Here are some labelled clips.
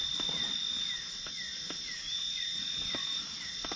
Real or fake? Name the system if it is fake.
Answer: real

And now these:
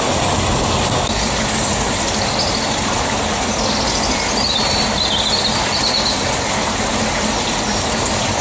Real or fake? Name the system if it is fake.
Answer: real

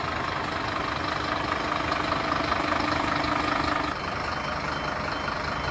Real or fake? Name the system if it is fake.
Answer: real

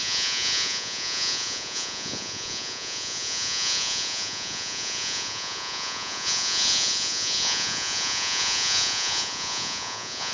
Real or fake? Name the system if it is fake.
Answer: fake, vocoder, Vocos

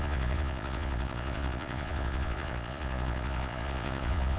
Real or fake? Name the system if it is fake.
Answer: fake, vocoder, Vocos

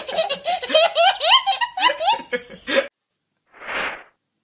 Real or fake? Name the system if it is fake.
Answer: real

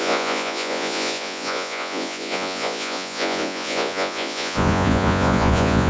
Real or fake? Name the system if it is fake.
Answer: fake, vocoder, Vocos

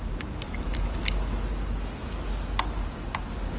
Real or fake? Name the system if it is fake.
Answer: real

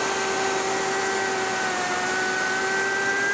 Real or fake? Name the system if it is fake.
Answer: real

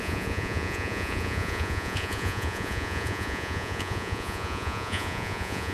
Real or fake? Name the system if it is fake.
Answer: fake, vocoder, Vocos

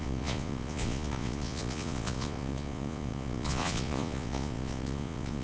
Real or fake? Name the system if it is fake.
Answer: fake, vocoder, Vocos